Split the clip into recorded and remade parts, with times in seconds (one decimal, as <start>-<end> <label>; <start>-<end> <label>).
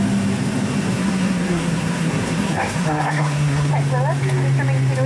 0.0-0.9 recorded; 0.9-3.7 remade; 3.7-5.1 recorded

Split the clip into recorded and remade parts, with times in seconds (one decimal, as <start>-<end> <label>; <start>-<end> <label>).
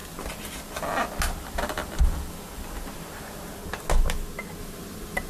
0.0-3.2 recorded; 3.2-3.6 remade; 3.6-4.6 recorded; 4.6-5.3 remade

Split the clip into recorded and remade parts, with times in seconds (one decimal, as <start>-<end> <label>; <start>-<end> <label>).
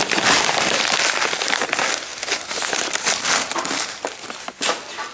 0.0-2.1 recorded; 2.1-4.1 remade; 4.1-5.1 recorded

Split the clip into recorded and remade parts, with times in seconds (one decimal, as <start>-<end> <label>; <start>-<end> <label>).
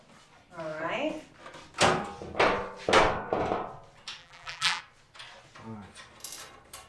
0.0-4.2 recorded; 4.2-4.8 remade; 4.8-6.9 recorded